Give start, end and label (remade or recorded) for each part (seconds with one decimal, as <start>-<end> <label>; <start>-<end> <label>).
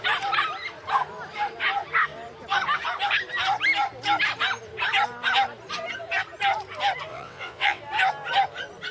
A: 0.0-7.1 recorded; 7.1-7.8 remade; 7.8-8.9 recorded